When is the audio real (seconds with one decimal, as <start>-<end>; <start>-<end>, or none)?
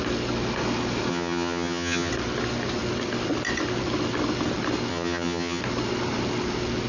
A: 0.0-1.1; 2.1-4.9; 5.6-6.9